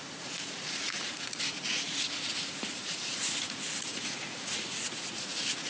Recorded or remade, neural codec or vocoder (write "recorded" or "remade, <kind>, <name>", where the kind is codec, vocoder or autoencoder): remade, vocoder, Vocos